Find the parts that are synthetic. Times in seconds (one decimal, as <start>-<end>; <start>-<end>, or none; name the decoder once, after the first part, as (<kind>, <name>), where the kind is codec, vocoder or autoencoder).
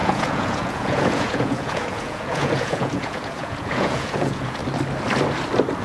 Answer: 0.0-4.6 (vocoder, Vocos)